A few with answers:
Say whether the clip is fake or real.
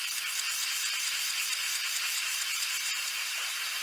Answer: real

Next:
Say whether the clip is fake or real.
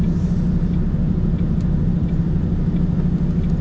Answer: real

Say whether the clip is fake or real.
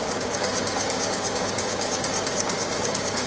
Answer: fake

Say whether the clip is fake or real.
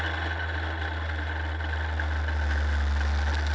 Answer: real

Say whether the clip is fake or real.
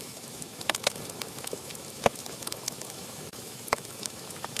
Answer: fake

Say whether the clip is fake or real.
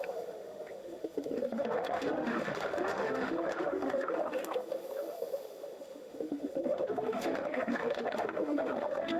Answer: fake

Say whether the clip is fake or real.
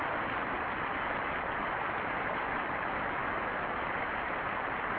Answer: real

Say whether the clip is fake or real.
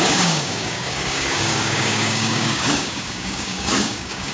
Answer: fake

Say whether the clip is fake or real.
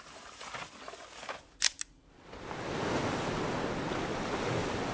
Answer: real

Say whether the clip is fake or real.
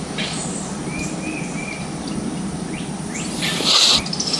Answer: fake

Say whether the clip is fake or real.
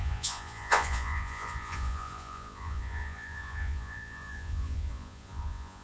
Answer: fake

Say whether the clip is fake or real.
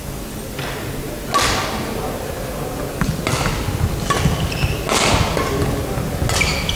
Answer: real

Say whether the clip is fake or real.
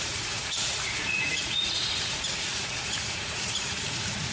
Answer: fake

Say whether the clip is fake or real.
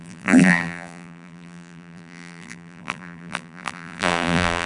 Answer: fake